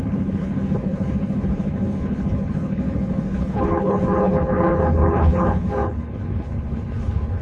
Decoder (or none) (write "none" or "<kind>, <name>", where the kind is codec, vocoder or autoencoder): codec, HILCodec